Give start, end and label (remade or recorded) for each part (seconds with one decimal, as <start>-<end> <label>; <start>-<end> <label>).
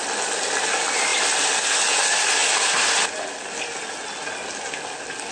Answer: 0.0-5.3 recorded